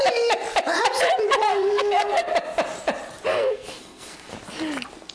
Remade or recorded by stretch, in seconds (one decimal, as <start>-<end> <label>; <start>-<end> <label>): 0.0-1.5 recorded; 1.5-2.3 remade; 2.3-3.3 recorded; 3.3-4.3 remade; 4.3-5.1 recorded